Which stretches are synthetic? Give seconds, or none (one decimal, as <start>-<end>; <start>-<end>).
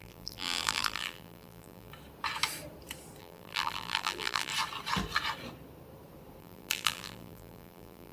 0.0-1.9; 3.2-4.5; 6.4-8.1